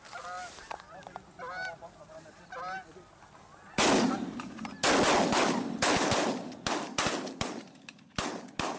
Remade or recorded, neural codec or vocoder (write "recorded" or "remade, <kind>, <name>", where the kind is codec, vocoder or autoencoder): recorded